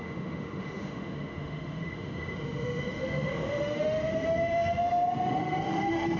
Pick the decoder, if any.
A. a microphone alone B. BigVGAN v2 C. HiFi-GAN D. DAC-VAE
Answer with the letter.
D